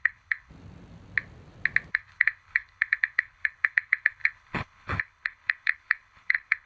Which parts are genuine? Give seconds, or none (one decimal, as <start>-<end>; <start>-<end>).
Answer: 0.5-1.9